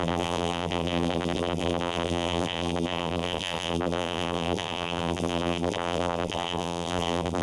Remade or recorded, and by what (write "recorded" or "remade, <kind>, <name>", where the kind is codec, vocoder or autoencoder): remade, vocoder, BigVGAN v2